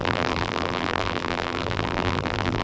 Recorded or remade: remade